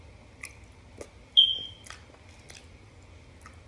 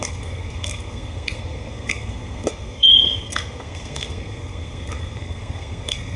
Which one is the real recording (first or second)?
first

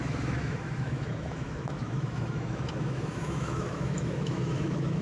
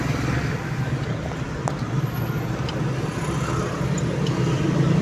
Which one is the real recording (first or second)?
second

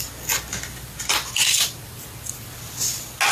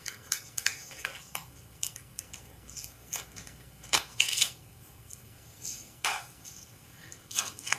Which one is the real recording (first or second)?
first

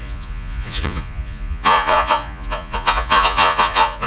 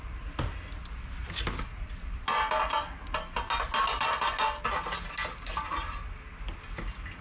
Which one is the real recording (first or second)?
second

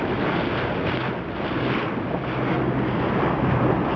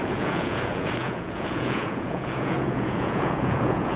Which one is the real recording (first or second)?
first